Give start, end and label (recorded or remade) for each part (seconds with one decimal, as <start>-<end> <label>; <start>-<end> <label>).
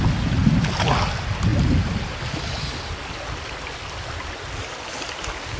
0.0-5.6 recorded